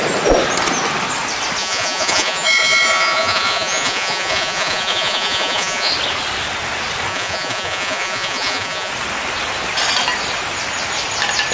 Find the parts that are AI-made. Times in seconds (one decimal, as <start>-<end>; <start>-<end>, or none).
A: 1.6-5.9; 7.1-8.9